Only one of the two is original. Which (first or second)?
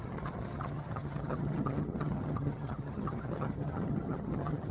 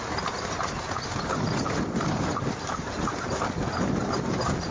second